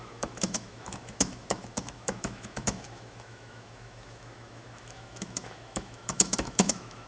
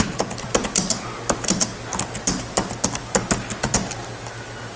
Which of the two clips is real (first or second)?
second